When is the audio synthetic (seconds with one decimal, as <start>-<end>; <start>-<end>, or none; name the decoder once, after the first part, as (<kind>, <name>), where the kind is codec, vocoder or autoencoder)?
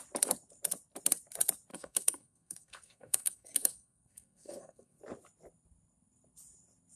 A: 1.7-5.0 (codec, SNAC)